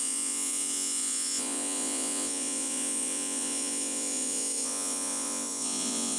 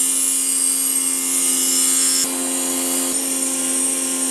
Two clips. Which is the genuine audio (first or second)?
second